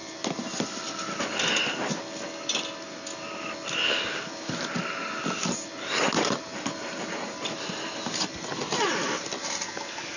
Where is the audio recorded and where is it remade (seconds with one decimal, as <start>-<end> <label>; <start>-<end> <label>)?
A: 0.0-10.2 recorded